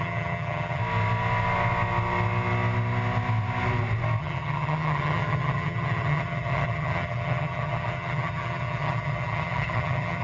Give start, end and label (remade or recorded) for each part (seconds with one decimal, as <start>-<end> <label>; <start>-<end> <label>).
0.0-0.8 remade; 0.8-4.2 recorded; 4.2-10.2 remade